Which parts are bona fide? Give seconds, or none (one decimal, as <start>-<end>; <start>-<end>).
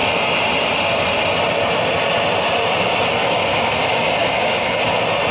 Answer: 0.0-3.2; 3.7-4.2; 4.8-5.3